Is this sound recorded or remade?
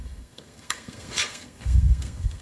remade